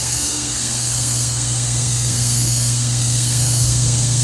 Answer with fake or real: fake